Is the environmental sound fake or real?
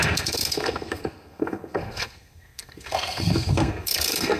fake